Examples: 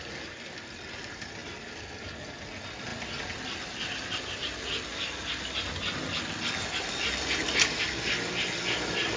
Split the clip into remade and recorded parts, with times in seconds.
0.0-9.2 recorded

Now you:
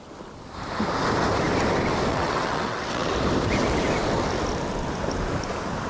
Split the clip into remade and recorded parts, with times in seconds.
0.0-2.1 recorded; 2.1-3.1 remade; 3.1-5.9 recorded

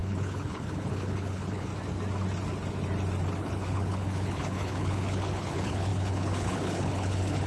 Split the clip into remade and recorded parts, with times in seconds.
0.0-1.7 remade; 1.7-3.4 recorded; 3.4-7.5 remade

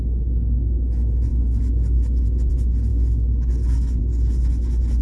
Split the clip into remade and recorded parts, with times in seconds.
0.0-1.3 recorded; 1.3-2.5 remade; 2.5-2.9 recorded; 2.9-4.0 remade; 4.0-5.0 recorded

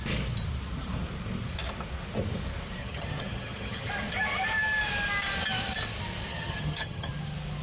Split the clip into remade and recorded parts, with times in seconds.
0.0-2.8 recorded; 2.8-3.9 remade; 3.9-6.3 recorded; 6.3-7.1 remade; 7.1-7.6 recorded

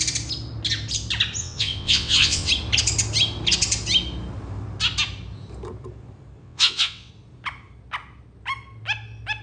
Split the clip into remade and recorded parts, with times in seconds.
0.0-1.4 recorded; 1.4-2.5 remade; 2.5-6.4 recorded; 6.4-7.1 remade; 7.1-9.4 recorded

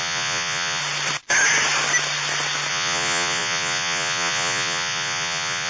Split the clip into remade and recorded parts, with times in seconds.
0.0-0.8 remade; 0.8-2.7 recorded; 2.7-5.7 remade